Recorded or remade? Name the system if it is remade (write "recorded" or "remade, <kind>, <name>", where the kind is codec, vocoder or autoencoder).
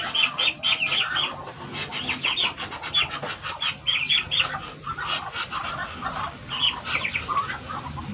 recorded